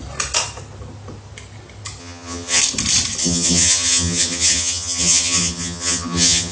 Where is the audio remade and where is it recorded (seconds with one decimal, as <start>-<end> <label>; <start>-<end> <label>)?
0.0-2.0 recorded; 2.0-2.6 remade; 2.6-3.2 recorded; 3.2-6.5 remade